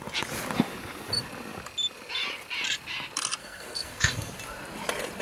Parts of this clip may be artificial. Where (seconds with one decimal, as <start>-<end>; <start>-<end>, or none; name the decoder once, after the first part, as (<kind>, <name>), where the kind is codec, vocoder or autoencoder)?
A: 3.4-4.3 (codec, SNAC)